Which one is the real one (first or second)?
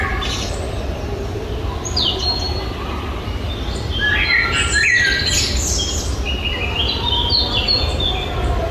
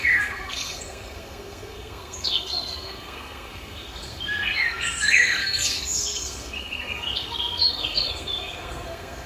first